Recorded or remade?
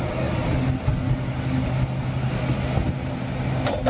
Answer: recorded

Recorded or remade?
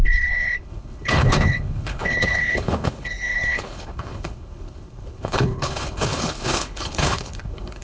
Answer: remade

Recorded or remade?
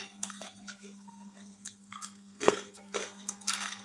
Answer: remade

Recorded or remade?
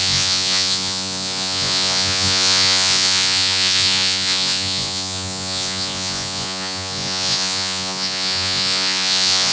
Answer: remade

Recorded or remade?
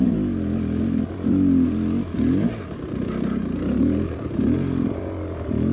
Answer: recorded